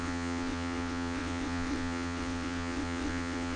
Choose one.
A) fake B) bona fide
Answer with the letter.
A